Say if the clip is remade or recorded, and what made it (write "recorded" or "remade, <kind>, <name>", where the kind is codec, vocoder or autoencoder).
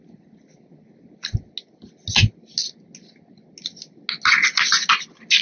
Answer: recorded